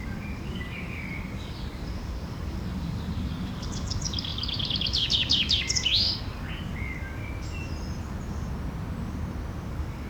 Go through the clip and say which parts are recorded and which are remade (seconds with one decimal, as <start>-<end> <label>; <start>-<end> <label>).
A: 0.0-7.2 remade; 7.2-9.7 recorded; 9.7-10.1 remade